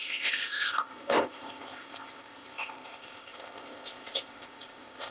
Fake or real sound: fake